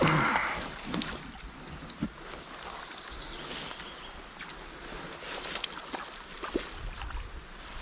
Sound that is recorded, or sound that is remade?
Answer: recorded